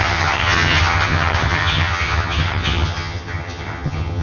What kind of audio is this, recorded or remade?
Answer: remade